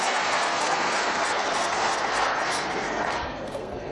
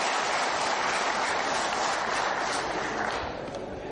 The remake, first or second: first